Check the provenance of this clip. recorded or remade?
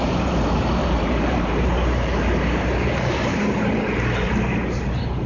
remade